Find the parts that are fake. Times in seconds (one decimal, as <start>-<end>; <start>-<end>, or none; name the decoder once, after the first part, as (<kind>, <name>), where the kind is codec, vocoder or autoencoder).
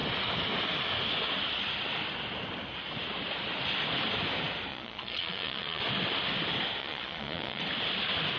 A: 4.7-5.8 (vocoder, Vocos); 6.8-7.6